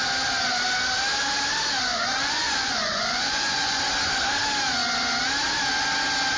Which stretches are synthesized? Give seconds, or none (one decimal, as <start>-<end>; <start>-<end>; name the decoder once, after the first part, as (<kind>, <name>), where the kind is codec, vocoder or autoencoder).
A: 1.9-3.8 (vocoder, Vocos)